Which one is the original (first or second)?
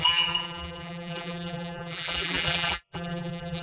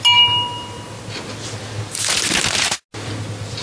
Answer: second